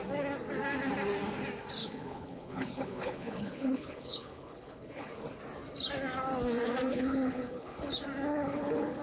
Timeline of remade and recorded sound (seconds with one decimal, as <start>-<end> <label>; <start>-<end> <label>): 0.0-1.8 recorded; 1.8-5.4 remade; 5.4-6.9 recorded; 6.9-7.9 remade; 7.9-8.3 recorded; 8.3-9.0 remade